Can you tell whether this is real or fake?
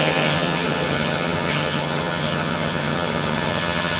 fake